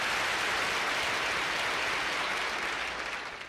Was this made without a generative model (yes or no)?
yes